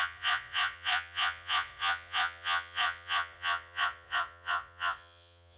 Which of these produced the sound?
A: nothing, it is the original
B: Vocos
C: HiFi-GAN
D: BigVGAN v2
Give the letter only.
B